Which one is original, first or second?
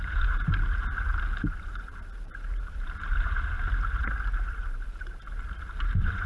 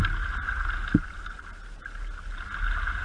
second